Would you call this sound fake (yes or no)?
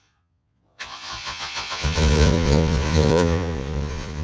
yes